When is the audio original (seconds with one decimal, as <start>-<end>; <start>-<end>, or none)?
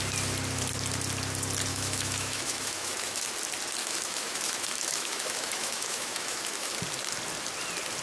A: 0.0-1.7; 3.3-3.8; 6.7-8.0